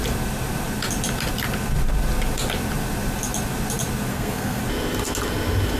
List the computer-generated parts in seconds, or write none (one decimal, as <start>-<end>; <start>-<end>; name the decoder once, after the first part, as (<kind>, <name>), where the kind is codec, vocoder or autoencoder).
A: 4.1-4.6 (codec, SNAC)